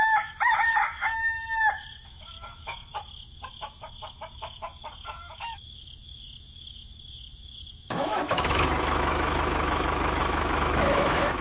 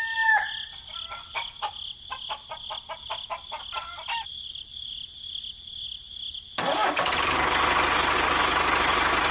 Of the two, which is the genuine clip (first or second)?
second